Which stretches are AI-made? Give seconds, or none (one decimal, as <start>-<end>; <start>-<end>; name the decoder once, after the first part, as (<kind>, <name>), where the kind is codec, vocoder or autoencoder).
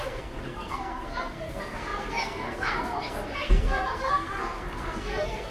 0.0-5.5 (codec, SNAC)